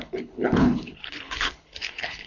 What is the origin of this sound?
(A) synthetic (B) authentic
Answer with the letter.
A